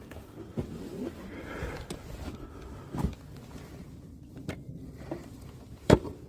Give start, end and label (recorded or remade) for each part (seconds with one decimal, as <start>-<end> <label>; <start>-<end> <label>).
0.0-3.8 recorded; 3.8-6.3 remade